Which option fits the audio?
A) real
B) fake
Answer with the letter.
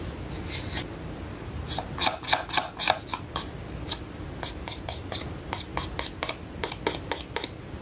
A